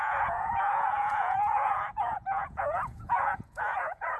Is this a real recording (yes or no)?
no